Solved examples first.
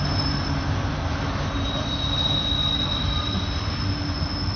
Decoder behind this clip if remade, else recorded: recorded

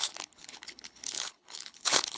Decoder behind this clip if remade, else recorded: remade, codec, HILCodec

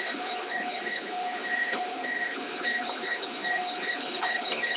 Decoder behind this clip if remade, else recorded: remade, codec, HILCodec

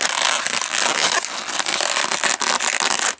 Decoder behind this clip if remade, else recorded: recorded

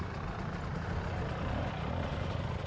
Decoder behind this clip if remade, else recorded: recorded